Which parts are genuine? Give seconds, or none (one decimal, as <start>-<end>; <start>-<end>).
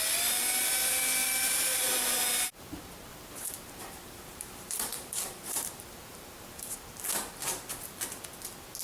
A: 0.0-1.2; 1.8-3.1; 6.7-8.8